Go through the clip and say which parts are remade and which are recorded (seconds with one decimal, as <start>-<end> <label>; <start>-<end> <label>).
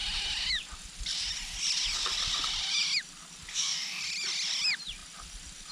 0.0-3.5 recorded; 3.5-4.0 remade; 4.0-5.7 recorded